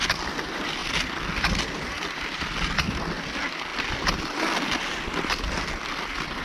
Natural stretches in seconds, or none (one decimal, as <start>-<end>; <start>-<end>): 0.0-6.4